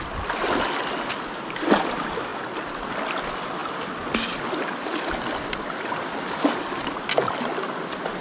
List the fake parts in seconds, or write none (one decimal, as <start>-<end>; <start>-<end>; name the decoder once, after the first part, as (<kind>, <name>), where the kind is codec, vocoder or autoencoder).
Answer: none